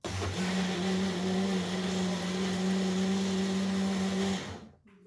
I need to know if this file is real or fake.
real